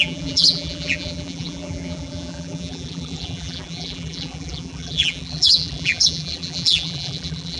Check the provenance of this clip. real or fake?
fake